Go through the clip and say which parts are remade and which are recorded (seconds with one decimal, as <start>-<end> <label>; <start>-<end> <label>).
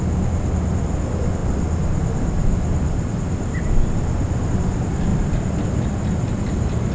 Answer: 0.0-6.9 remade